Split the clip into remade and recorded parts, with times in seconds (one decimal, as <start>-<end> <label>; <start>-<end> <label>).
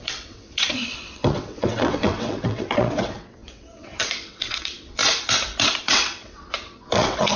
0.0-5.0 remade; 5.0-5.8 recorded; 5.8-7.4 remade